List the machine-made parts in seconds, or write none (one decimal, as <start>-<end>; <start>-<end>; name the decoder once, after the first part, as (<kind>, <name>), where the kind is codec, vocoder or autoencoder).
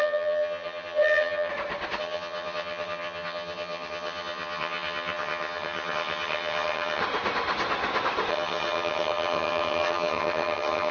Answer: 0.0-1.5 (vocoder, HiFi-GAN); 2.0-7.0; 8.3-10.9